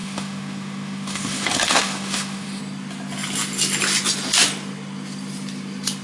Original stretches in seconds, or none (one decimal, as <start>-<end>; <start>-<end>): 2.6-6.0